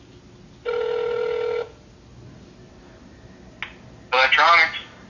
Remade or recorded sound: recorded